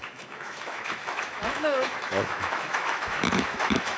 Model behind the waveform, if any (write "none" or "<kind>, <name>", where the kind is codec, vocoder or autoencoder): autoencoder, DAC-VAE